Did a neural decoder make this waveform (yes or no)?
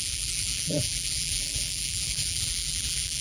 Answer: yes